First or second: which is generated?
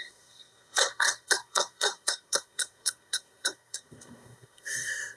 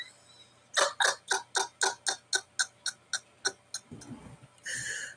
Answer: first